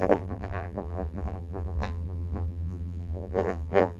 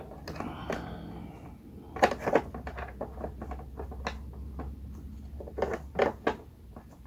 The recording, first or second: second